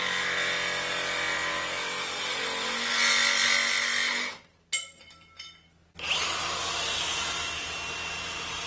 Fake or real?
real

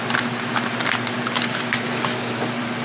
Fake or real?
real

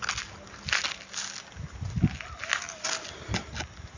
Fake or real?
real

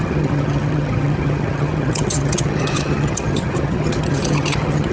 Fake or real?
fake